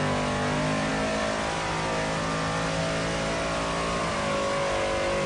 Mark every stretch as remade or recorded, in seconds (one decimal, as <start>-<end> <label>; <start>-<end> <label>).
0.0-5.3 recorded